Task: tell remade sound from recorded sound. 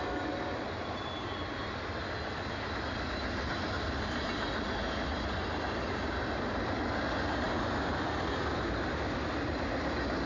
recorded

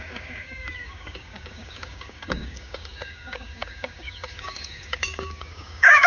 remade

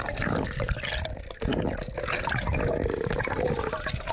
recorded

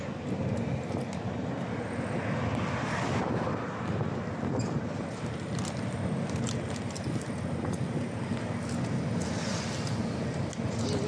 recorded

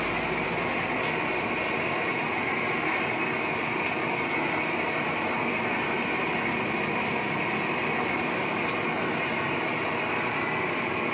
recorded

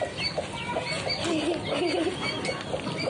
recorded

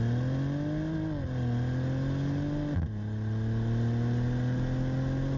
recorded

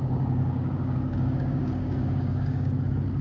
remade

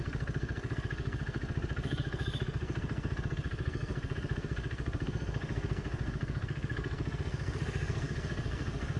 remade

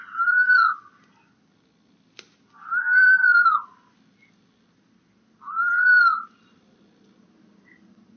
recorded